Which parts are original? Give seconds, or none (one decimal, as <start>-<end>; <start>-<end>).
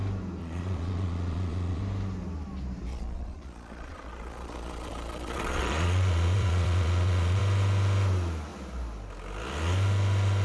0.0-0.4; 1.8-2.9; 7.4-10.4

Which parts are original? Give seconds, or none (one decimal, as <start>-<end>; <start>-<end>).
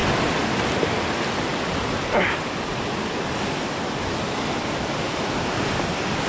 0.0-6.3